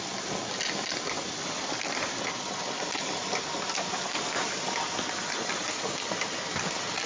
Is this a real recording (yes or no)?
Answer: yes